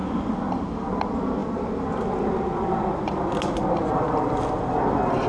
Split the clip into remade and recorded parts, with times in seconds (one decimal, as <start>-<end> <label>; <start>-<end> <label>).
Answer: 0.0-5.3 recorded